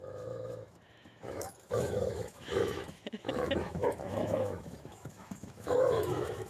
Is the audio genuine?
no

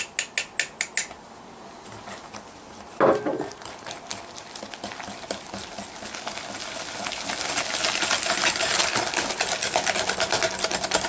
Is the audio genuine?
yes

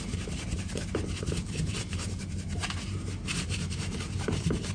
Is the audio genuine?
no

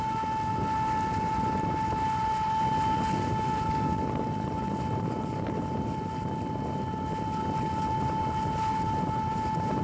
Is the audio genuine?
yes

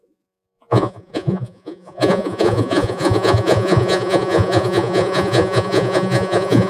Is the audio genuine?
no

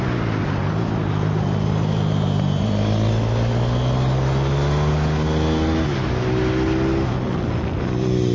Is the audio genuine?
yes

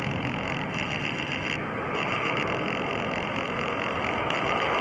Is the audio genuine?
no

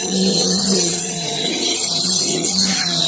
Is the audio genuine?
no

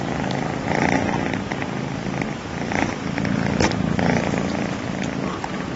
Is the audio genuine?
no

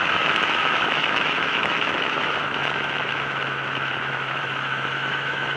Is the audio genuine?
no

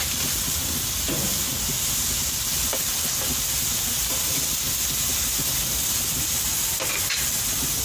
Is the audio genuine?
yes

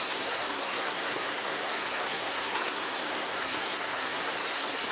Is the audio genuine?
no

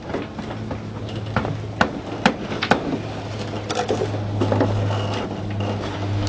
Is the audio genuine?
yes